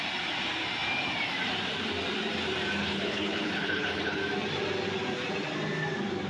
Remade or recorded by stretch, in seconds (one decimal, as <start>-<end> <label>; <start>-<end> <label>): 0.0-2.8 recorded; 2.8-4.2 remade; 4.2-6.3 recorded